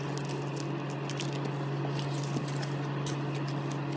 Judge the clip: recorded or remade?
recorded